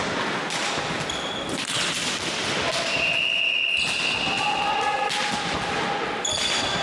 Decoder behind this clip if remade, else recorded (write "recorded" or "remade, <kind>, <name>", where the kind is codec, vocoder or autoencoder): recorded